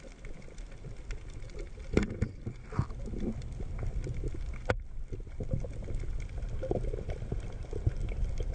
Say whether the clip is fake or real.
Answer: real